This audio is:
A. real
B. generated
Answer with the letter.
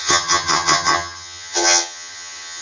B